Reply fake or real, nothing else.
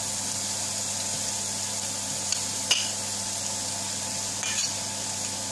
real